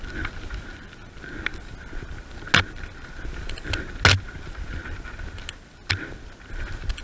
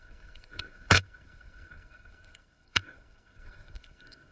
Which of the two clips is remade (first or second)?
second